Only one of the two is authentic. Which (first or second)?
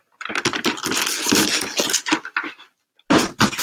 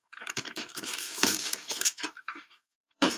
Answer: first